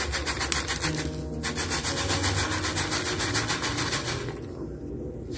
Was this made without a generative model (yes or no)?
yes